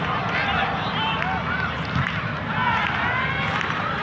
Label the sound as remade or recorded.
recorded